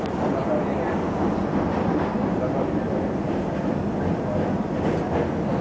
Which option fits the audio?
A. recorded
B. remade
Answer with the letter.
A